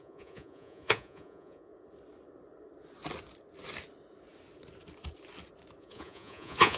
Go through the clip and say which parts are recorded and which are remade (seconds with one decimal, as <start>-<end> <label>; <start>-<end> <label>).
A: 0.0-1.7 remade; 1.7-5.8 recorded; 5.8-6.8 remade